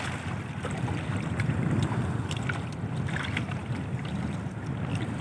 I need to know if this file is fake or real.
real